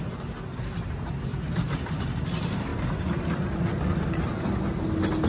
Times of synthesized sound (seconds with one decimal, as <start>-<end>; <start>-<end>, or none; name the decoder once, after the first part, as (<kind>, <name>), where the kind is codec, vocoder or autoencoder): 1.3-1.9 (vocoder, BigVGAN v2); 2.7-3.6